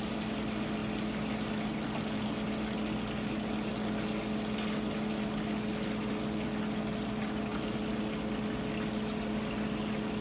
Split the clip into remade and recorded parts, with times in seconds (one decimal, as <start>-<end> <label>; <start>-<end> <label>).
0.0-10.2 recorded